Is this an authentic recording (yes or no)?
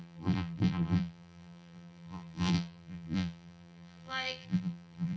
no